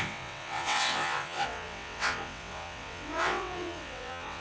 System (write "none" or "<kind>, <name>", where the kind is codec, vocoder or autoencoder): vocoder, WaveNeXt